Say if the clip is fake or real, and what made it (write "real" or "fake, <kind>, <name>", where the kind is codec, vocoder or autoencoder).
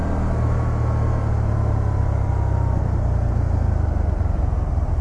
real